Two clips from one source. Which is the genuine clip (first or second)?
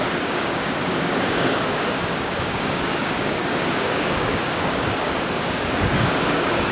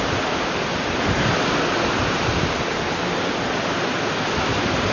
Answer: second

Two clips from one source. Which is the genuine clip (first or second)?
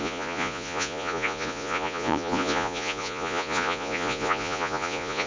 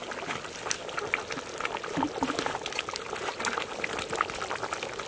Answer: second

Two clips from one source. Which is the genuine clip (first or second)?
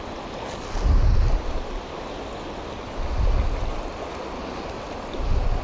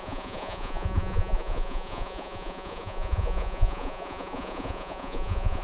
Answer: first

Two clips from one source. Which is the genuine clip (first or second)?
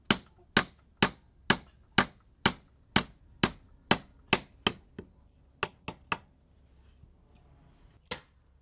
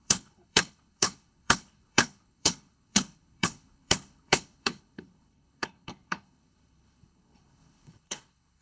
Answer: first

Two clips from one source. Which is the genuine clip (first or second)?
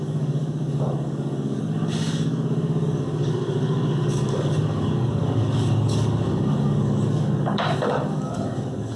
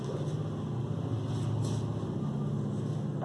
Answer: second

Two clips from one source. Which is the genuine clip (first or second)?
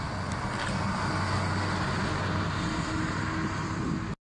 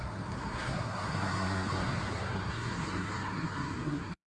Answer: first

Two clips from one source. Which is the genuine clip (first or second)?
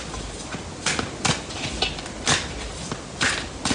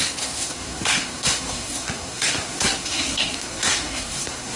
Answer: first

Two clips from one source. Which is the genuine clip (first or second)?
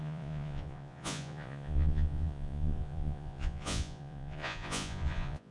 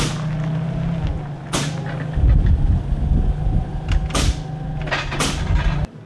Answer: second